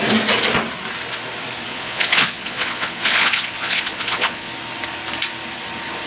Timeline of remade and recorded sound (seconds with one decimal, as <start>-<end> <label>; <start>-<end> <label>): 0.0-1.7 recorded; 1.7-4.5 remade; 4.5-6.1 recorded